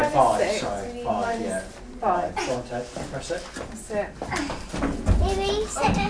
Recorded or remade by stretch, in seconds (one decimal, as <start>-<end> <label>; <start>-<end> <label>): 0.0-6.1 recorded